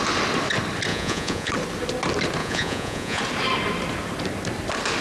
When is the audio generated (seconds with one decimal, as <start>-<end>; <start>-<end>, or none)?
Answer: 0.9-1.5; 2.4-3.2